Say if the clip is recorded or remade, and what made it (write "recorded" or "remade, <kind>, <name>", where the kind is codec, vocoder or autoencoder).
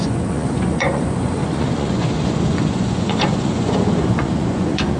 remade, vocoder, Vocos